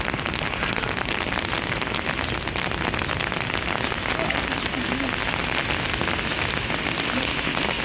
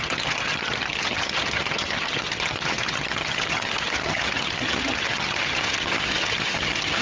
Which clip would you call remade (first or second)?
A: second